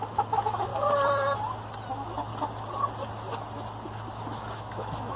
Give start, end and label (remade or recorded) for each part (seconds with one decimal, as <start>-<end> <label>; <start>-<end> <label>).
0.0-0.7 remade; 0.7-1.9 recorded; 1.9-2.3 remade; 2.3-4.1 recorded; 4.1-5.2 remade